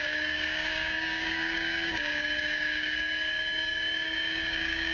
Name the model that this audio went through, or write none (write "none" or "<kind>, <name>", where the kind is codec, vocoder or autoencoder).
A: codec, DAC